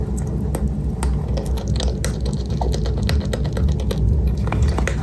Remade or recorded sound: recorded